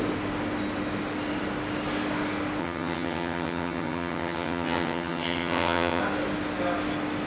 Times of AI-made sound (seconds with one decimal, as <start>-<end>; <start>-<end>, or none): 2.6-6.0